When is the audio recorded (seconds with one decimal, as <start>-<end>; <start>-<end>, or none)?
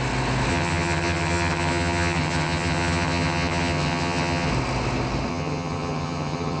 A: 0.0-0.5; 4.5-5.3